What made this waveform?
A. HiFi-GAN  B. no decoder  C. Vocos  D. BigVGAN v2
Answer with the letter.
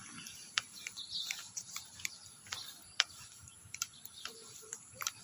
D